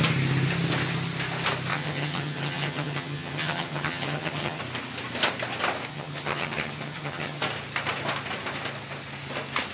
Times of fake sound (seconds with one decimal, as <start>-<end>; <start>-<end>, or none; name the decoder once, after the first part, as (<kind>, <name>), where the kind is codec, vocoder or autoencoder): 1.7-4.6 (vocoder, HiFi-GAN); 5.9-7.4